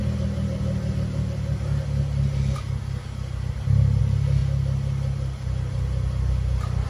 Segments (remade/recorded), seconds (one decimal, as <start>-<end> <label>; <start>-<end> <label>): 0.0-6.9 recorded